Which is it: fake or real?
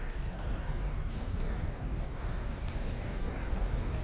fake